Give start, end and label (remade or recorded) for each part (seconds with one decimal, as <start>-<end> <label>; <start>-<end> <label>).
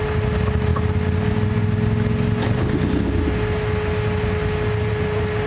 0.0-5.5 recorded